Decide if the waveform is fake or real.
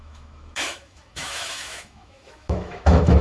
fake